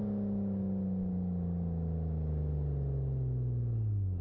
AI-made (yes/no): no